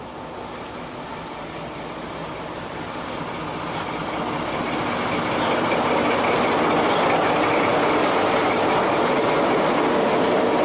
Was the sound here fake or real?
real